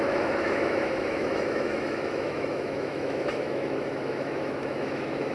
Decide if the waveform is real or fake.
fake